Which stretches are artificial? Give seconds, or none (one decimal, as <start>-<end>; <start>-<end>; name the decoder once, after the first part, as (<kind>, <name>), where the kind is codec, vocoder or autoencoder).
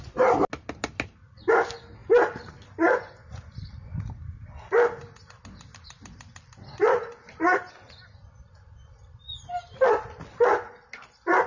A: none